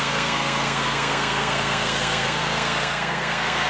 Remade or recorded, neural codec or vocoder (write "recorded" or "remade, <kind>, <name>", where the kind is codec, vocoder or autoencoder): remade, codec, SNAC